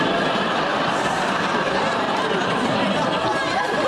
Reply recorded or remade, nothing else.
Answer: recorded